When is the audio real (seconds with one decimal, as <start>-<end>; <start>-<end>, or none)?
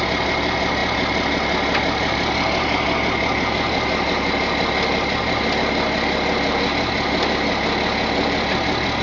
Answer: 0.0-9.0